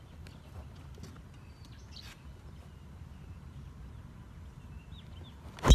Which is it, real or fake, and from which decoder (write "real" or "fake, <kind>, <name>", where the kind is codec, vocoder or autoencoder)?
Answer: real